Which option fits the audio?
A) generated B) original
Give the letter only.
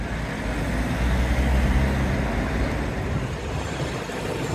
B